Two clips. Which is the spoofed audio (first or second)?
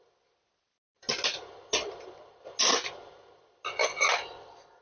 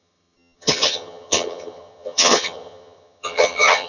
second